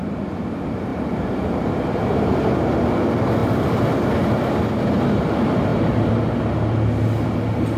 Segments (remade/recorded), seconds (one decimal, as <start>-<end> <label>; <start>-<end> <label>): 0.0-0.9 recorded; 0.9-2.4 remade; 2.4-7.8 recorded